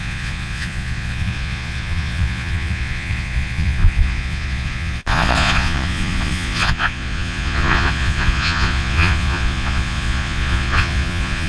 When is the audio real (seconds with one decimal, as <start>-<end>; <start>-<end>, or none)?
none

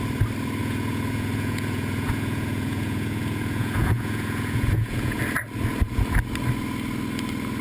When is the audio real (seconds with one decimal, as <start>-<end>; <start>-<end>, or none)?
0.0-0.6; 5.2-7.6

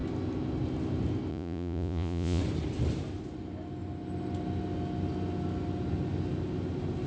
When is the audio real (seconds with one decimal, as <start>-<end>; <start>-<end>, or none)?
0.0-1.3; 2.4-7.1

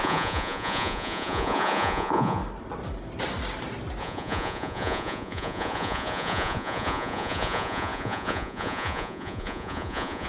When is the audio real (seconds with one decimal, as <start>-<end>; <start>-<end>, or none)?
2.4-4.0

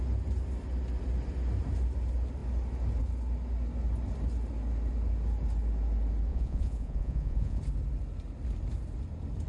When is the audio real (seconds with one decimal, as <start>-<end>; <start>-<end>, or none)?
0.0-6.3; 7.6-9.5

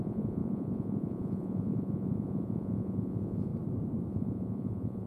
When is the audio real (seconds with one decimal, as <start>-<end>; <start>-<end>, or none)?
3.5-4.1